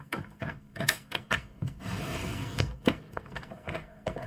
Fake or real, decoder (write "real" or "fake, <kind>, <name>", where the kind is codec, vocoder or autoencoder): fake, codec, SNAC